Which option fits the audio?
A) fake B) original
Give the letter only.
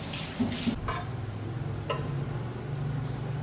B